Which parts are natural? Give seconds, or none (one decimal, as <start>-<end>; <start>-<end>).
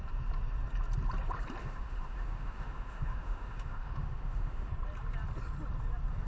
0.0-1.6; 4.7-6.3